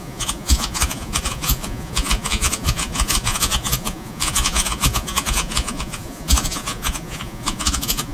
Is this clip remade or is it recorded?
remade